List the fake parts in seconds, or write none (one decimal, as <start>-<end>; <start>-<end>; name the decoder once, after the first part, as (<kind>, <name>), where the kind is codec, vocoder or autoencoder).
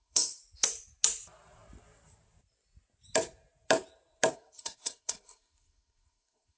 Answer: 0.0-0.4 (codec, SNAC); 4.3-6.6